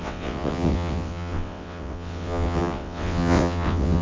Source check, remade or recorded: remade